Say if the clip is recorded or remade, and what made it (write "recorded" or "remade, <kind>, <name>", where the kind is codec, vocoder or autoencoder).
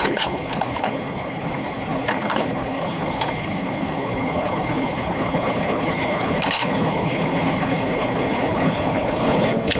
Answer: remade, codec, HILCodec